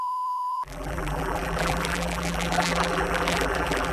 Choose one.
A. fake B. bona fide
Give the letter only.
A